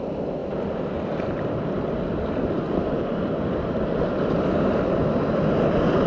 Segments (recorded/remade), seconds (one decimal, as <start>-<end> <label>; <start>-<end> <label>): 0.0-6.1 recorded